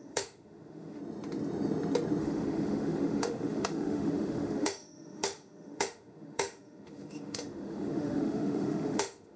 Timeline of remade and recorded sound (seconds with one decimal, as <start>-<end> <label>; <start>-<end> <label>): 0.0-1.0 remade; 1.0-2.2 recorded; 2.2-9.4 remade